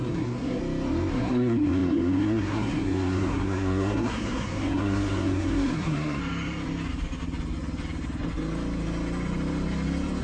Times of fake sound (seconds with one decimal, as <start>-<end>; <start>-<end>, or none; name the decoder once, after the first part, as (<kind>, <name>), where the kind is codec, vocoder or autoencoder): 0.0-0.6 (codec, SNAC); 1.1-6.2